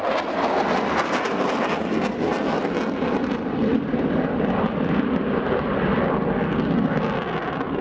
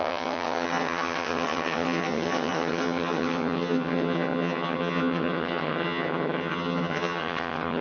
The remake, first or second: second